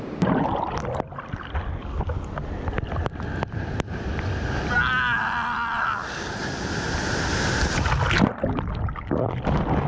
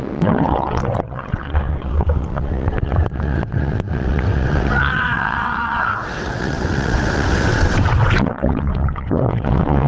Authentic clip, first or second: first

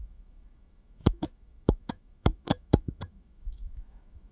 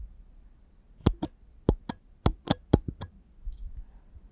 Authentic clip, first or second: second